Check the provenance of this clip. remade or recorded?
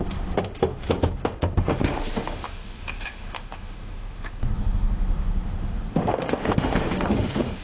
remade